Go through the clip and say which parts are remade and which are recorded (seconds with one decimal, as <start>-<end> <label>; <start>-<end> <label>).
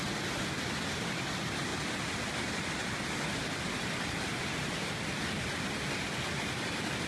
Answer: 0.0-7.1 recorded